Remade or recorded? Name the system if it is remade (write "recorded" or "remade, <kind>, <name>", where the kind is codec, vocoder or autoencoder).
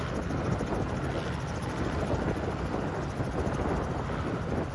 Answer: recorded